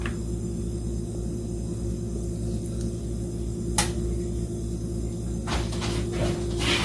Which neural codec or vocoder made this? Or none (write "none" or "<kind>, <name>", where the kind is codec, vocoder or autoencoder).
none